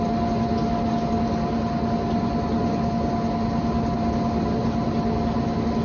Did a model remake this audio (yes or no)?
no